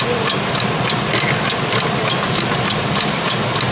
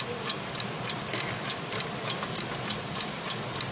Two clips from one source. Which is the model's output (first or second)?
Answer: second